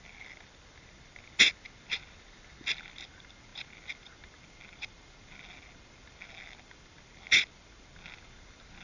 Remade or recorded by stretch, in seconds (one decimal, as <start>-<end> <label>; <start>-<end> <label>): 0.0-8.8 recorded